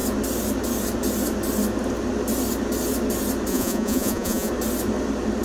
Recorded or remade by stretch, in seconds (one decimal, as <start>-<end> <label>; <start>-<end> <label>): 0.0-3.5 recorded; 3.5-4.5 remade; 4.5-5.4 recorded